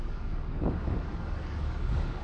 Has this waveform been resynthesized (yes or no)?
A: yes